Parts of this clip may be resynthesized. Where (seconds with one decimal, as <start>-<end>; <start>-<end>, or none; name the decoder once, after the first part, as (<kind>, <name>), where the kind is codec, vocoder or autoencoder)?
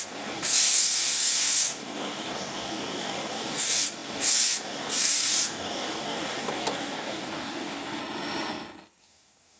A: 0.0-8.0 (codec, DAC); 9.0-9.6